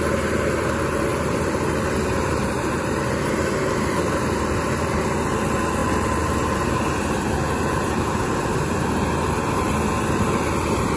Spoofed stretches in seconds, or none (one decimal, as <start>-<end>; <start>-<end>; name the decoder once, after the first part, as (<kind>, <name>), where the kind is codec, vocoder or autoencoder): 1.1-5.0 (vocoder, BigVGAN v2); 5.8-8.9